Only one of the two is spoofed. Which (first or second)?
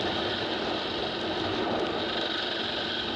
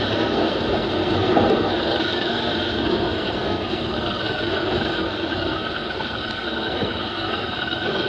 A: second